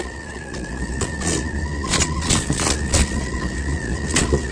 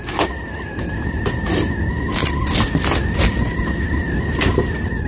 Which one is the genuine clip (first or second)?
second